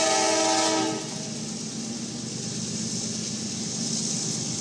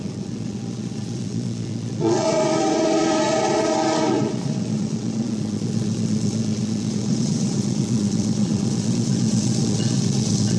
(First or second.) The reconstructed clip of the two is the second